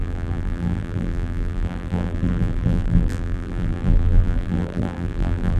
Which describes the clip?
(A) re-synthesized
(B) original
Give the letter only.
A